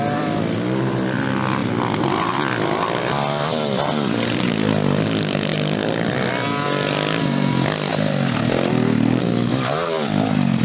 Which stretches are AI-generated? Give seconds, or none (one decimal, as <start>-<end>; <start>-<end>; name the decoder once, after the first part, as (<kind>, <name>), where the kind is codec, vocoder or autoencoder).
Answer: none